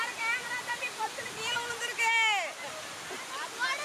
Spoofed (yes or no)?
no